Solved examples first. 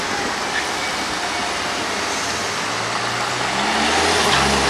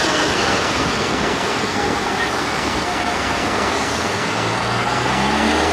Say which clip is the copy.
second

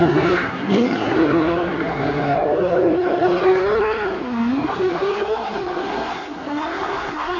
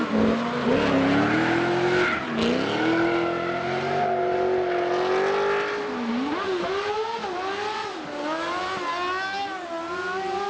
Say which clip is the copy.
first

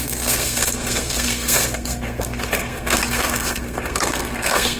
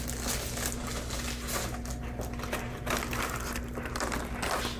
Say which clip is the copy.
first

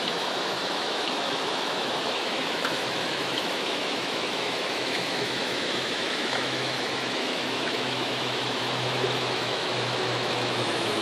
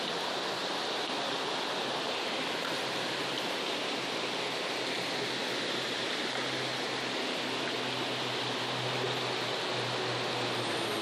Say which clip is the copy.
first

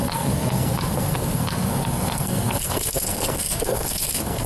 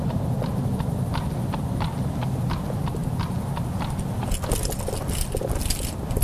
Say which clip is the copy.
first